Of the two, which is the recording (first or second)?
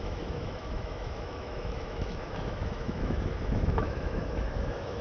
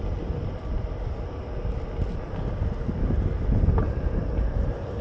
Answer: second